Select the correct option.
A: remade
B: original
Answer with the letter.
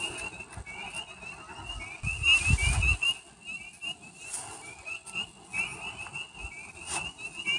B